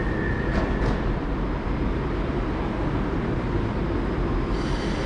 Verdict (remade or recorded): recorded